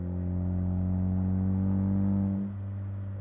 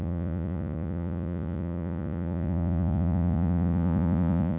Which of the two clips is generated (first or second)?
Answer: second